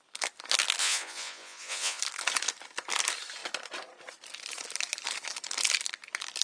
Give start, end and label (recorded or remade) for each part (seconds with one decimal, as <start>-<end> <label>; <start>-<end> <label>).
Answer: 0.0-0.8 recorded; 0.8-2.0 remade; 2.0-6.4 recorded